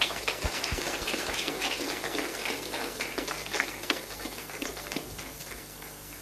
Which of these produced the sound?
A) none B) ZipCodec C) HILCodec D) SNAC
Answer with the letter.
D